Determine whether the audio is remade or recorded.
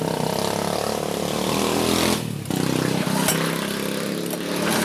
recorded